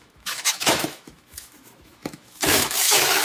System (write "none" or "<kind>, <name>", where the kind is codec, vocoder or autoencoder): autoencoder, DAC-VAE